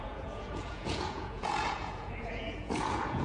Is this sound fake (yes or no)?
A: yes